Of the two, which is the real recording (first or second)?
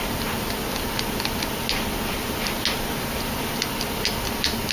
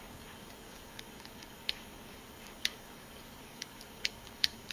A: first